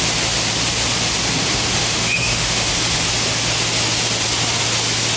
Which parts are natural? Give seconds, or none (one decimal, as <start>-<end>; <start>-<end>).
0.0-1.8; 2.7-5.2